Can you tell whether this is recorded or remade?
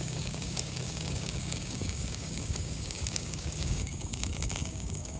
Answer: remade